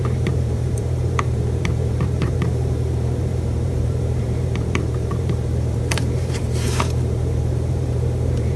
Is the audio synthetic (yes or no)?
yes